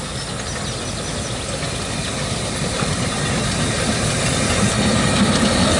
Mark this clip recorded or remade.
recorded